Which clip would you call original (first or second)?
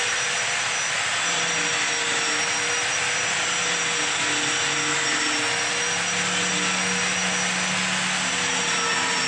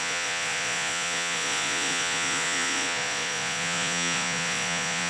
first